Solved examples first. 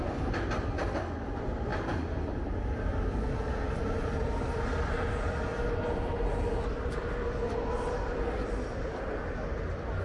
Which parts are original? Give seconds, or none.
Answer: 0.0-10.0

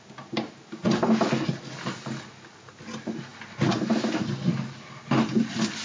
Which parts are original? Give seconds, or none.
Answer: 0.0-5.8

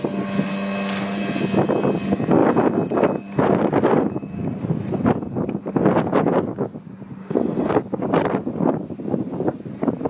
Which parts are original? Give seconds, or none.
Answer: 0.0-7.2; 7.7-10.1